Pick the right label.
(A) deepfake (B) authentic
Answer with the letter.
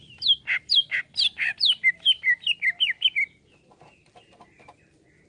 B